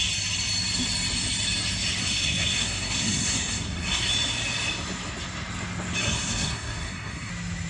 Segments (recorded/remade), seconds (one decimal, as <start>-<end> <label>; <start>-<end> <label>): 0.0-2.0 recorded; 2.0-4.1 remade; 4.1-6.0 recorded; 6.0-7.3 remade; 7.3-7.7 recorded